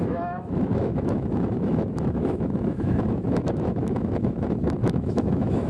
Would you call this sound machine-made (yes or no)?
yes